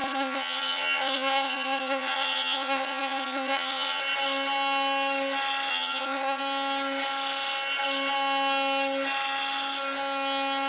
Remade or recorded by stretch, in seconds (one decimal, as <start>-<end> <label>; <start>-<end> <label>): 0.0-4.0 remade; 4.0-5.7 recorded; 5.7-6.4 remade; 6.4-10.7 recorded